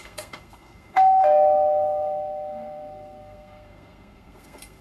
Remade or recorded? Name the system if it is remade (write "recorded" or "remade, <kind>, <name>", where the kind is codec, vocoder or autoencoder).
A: remade, codec, SNAC